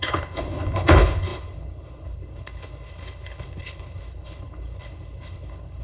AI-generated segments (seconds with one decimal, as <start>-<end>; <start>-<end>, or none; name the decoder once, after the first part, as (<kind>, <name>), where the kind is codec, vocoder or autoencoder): 0.0-5.8 (codec, HILCodec)